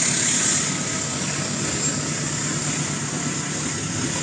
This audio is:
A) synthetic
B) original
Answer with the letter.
B